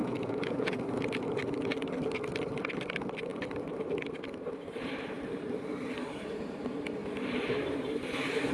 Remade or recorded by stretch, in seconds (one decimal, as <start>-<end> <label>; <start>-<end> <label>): 0.0-0.8 remade; 0.8-8.5 recorded